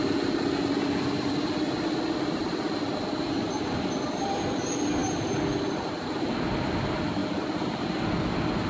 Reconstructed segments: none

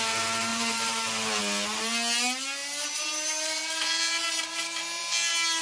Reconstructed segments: 0.5-1.4 (vocoder, BigVGAN v2)

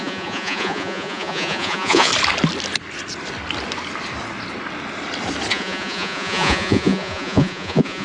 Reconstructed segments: 0.0-2.1 (vocoder, Vocos); 5.5-8.0

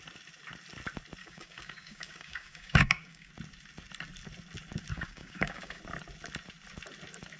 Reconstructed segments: 1.2-3.3 (codec, DAC); 4.9-5.8

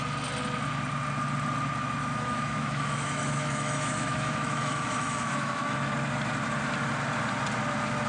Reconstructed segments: 2.0-5.9 (autoencoder, DAC-VAE)

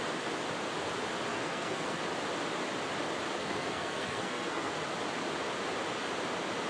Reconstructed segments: 1.3-2.0 (codec, SNAC); 3.4-4.7

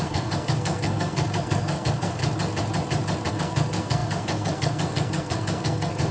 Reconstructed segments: 0.0-2.2 (codec, SNAC); 3.3-6.1